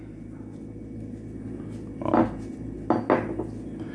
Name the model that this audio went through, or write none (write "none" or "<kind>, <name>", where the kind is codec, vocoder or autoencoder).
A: none